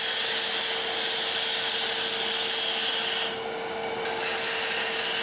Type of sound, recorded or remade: recorded